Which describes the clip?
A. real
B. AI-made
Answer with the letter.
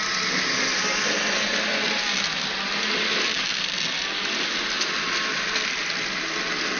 A